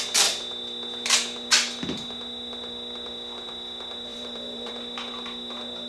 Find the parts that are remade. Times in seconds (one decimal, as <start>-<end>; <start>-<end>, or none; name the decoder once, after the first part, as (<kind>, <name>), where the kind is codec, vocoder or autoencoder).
4.1-4.7 (vocoder, BigVGAN v2)